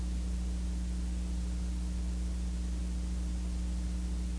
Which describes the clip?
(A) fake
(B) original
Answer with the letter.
B